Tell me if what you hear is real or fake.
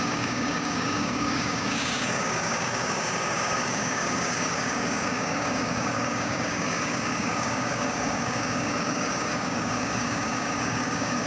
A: fake